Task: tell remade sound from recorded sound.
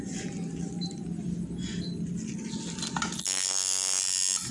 recorded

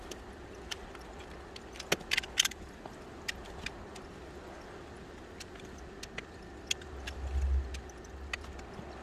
recorded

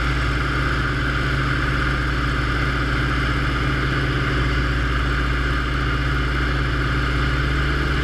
recorded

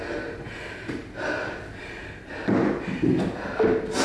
recorded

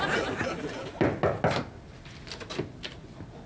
recorded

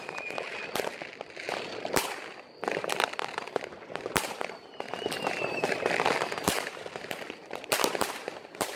remade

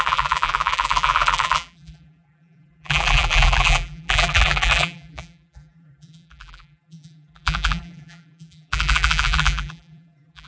remade